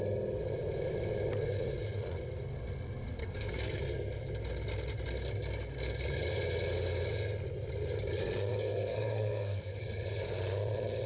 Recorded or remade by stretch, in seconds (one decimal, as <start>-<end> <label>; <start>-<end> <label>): 0.0-3.2 recorded; 3.2-3.8 remade; 3.8-8.5 recorded; 8.5-9.8 remade; 9.8-11.1 recorded